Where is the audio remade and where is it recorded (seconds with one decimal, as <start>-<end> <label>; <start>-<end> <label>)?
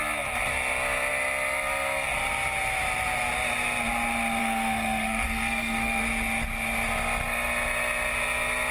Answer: 0.0-4.4 recorded; 4.4-6.0 remade; 6.0-8.7 recorded